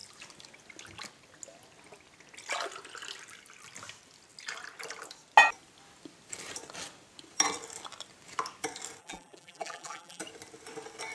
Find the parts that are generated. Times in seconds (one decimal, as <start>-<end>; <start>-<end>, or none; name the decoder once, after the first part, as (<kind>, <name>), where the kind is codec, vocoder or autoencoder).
9.0-10.2 (vocoder, BigVGAN v2)